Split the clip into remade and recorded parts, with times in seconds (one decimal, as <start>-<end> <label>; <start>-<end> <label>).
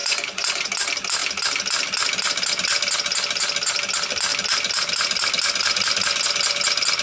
0.0-0.7 remade; 0.7-7.0 recorded